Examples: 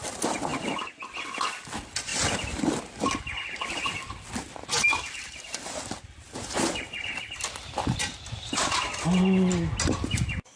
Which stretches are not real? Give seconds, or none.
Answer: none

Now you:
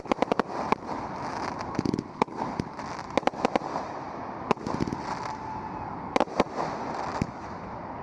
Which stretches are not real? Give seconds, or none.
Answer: none

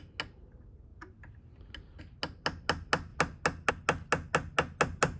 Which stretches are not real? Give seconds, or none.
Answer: none

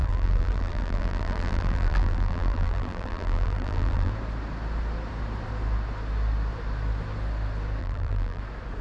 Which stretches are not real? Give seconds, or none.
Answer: 0.0-4.1 (vocoder, BigVGAN v2); 7.8-8.4